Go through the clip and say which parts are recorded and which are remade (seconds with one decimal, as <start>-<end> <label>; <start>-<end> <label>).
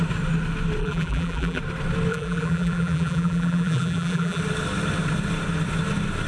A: 0.0-0.8 recorded; 0.8-1.6 remade; 1.6-2.1 recorded; 2.1-4.4 remade; 4.4-6.3 recorded